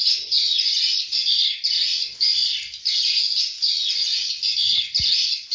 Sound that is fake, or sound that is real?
real